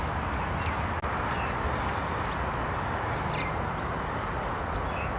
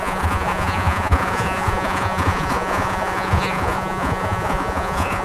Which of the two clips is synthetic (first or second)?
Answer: second